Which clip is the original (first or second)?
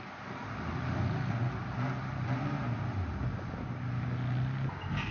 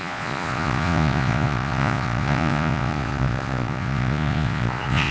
first